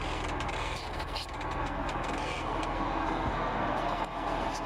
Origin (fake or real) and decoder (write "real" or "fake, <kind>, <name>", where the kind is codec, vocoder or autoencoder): fake, codec, SNAC